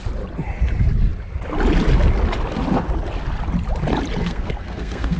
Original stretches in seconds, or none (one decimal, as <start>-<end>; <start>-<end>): 0.0-4.2